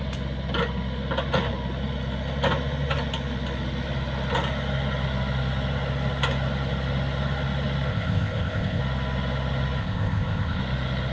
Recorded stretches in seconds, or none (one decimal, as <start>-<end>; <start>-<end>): 0.0-7.9; 8.8-9.8; 10.6-11.1